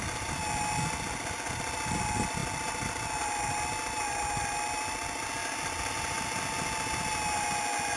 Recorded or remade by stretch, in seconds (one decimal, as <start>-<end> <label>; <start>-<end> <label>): 0.0-8.0 recorded